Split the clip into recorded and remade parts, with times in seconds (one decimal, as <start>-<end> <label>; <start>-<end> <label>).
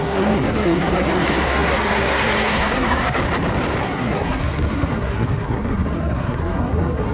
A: 0.0-3.2 remade; 3.2-3.8 recorded; 3.8-7.1 remade